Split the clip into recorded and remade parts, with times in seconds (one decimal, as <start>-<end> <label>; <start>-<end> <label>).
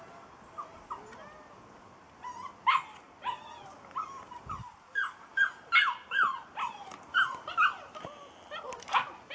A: 0.0-5.0 recorded; 5.0-8.3 remade; 8.3-9.3 recorded